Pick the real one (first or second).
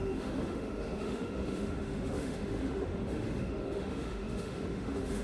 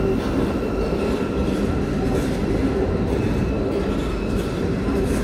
second